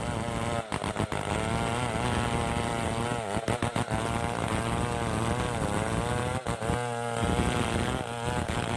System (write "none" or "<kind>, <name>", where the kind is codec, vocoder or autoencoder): none